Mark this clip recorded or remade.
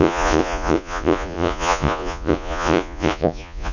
remade